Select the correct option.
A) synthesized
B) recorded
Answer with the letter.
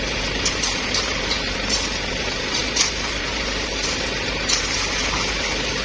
A